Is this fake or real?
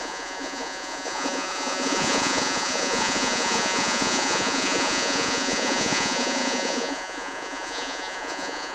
fake